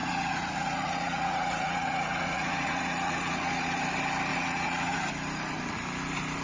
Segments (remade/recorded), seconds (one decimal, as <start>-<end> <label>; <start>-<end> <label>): 0.0-3.8 remade; 3.8-4.3 recorded; 4.3-5.0 remade; 5.0-6.4 recorded